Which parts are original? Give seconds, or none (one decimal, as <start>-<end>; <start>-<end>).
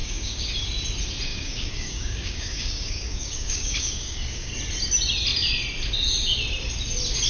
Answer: 0.5-1.3; 4.5-7.3